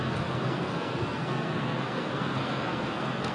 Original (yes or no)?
no